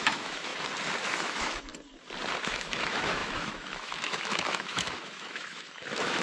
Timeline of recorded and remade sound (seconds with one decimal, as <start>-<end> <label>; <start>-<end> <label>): 0.0-0.5 remade; 0.5-1.2 recorded; 1.2-1.7 remade; 1.7-2.4 recorded; 2.4-6.2 remade